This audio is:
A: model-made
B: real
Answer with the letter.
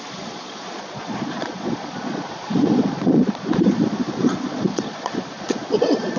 A